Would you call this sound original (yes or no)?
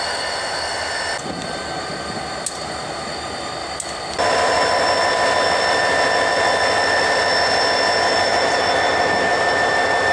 yes